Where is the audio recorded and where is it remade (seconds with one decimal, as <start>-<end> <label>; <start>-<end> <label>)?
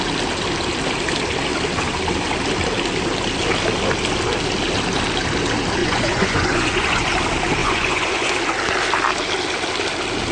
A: 0.0-5.8 recorded; 5.8-7.1 remade; 7.1-7.6 recorded; 7.6-8.3 remade; 8.3-10.3 recorded